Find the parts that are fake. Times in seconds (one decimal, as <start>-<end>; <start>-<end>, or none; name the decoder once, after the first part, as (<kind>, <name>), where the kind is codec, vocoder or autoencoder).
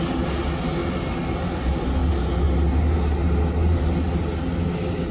none